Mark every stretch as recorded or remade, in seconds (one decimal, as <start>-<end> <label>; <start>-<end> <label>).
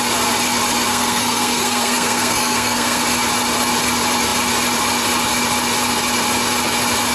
0.0-0.9 recorded; 0.9-3.0 remade; 3.0-7.1 recorded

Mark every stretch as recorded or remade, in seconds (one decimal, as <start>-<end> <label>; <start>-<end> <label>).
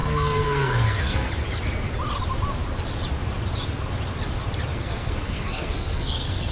0.0-1.3 remade; 1.3-4.7 recorded; 4.7-6.5 remade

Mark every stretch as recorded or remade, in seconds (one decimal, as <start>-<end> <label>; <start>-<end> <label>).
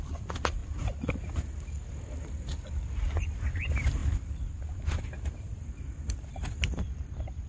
0.0-7.5 recorded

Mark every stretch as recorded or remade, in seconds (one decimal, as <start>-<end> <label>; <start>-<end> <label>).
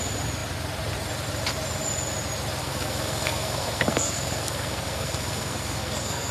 0.0-2.6 recorded; 2.6-6.3 remade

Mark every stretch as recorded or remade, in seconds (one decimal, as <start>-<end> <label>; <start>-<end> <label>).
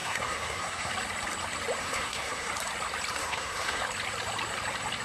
0.0-0.9 remade; 0.9-1.8 recorded; 1.8-2.5 remade; 2.5-3.2 recorded; 3.2-3.8 remade; 3.8-5.0 recorded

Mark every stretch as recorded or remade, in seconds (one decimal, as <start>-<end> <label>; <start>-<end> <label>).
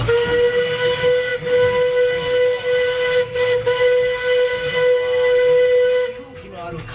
0.0-6.9 recorded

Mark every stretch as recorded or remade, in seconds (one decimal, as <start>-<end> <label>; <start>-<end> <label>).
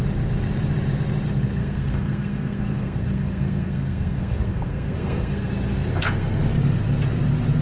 0.0-1.6 recorded; 1.6-5.5 remade; 5.5-5.9 recorded; 5.9-6.4 remade; 6.4-7.6 recorded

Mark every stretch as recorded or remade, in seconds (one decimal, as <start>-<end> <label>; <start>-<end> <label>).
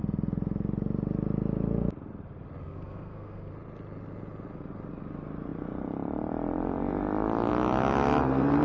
0.0-2.6 recorded; 2.6-3.5 remade; 3.5-8.6 recorded